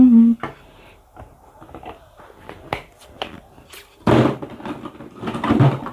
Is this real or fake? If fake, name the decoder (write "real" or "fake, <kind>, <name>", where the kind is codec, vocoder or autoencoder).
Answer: real